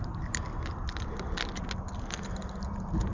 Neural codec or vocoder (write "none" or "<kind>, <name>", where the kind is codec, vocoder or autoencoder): none